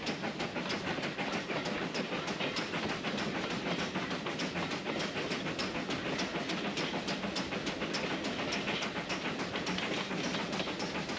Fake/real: real